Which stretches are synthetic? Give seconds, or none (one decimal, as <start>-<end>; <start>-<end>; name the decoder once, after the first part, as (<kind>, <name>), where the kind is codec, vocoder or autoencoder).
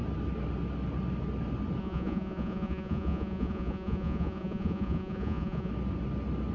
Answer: 1.8-5.7 (vocoder, Vocos)